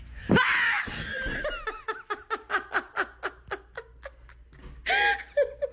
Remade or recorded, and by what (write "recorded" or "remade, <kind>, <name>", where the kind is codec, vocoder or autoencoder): recorded